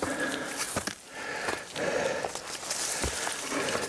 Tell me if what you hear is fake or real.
real